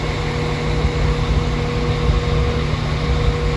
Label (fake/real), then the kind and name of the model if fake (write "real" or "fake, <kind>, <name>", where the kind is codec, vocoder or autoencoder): real